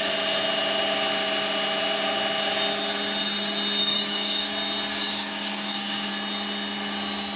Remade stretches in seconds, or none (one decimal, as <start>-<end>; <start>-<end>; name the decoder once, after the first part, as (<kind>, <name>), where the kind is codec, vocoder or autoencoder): 3.8-4.5 (codec, DAC); 4.9-6.1